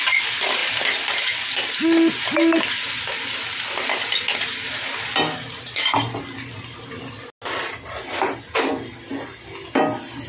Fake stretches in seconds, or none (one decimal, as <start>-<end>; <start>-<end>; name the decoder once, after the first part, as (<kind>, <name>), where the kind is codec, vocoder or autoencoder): none